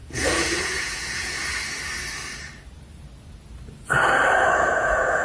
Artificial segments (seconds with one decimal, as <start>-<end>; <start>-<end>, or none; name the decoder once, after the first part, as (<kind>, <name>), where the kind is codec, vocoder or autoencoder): 0.0-1.5 (vocoder, Vocos); 4.6-5.2